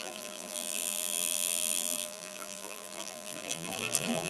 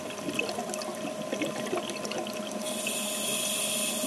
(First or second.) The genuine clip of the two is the second